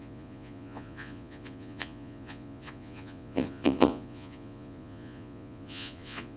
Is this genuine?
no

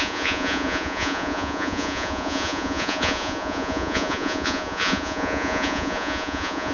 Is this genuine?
no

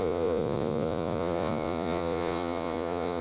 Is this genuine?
no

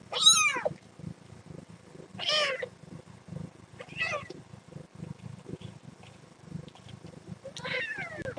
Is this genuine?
yes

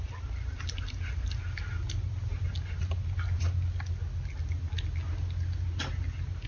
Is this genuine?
yes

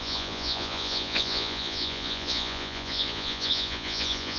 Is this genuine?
no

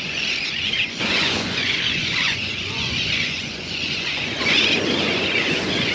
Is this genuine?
no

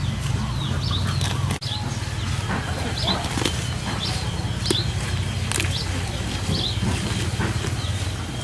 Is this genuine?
yes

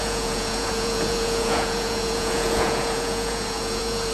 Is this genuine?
no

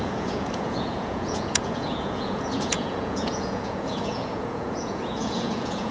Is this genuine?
no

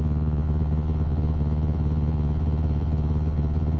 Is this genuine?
no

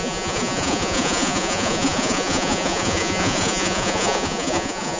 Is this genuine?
no